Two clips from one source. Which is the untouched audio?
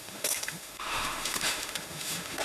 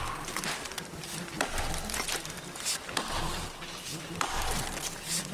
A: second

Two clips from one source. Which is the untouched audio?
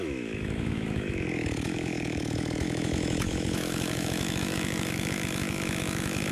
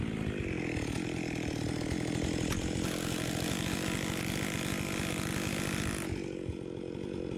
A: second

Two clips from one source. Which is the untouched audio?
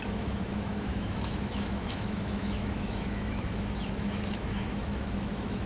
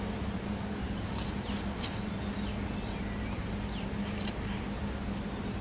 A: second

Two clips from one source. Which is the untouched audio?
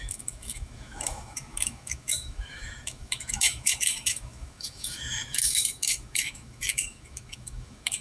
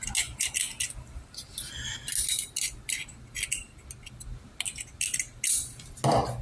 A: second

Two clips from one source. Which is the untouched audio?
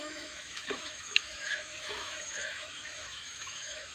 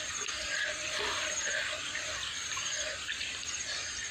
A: second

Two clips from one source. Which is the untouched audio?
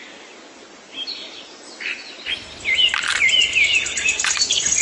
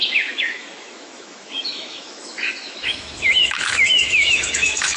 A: first